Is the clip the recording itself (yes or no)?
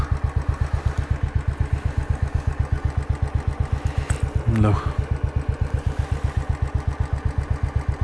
yes